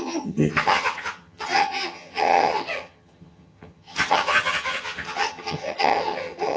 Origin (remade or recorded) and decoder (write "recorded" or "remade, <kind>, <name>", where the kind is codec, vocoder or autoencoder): remade, vocoder, HiFi-GAN